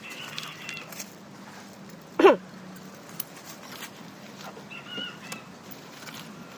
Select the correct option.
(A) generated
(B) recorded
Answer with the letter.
B